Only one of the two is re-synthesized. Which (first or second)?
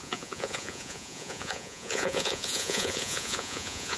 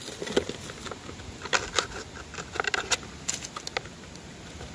first